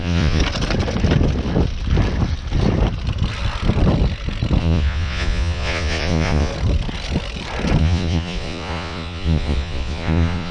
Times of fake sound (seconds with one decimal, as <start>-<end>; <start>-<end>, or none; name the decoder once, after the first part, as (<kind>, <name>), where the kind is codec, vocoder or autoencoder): 0.0-0.4 (vocoder, Vocos); 4.6-6.5; 7.8-10.5